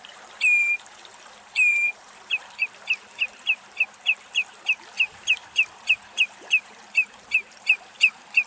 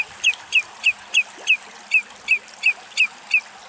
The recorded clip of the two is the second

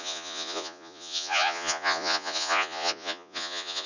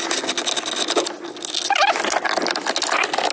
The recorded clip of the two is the second